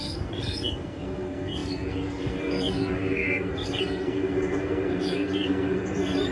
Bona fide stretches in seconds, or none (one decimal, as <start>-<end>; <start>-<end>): none